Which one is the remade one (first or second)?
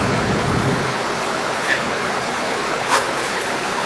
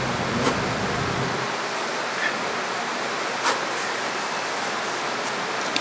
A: first